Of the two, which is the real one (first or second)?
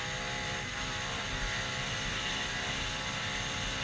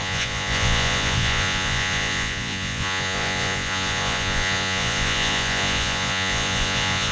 first